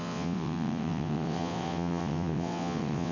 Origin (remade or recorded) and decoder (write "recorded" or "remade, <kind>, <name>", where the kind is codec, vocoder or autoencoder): remade, vocoder, WaveNeXt